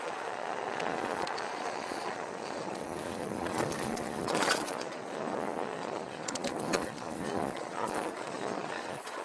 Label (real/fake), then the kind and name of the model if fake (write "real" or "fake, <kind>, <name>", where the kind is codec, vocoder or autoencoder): fake, vocoder, Vocos